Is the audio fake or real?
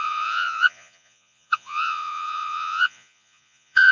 fake